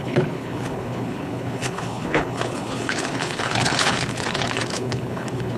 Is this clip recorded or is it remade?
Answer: remade